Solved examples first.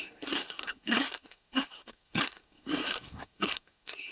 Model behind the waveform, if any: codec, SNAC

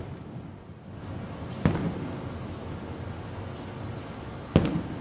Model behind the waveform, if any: none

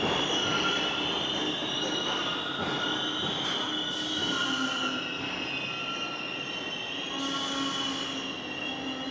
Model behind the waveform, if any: none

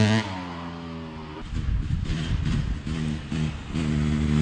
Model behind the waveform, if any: none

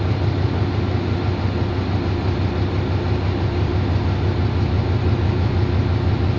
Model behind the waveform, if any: none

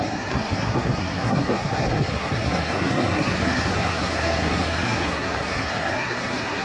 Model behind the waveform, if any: codec, SNAC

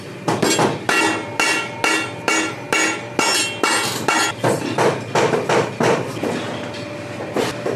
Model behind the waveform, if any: none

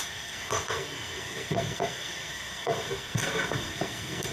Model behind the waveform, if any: codec, SNAC